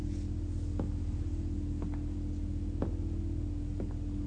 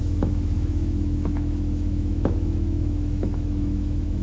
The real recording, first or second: first